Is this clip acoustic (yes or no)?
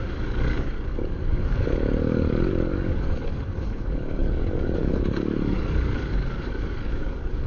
no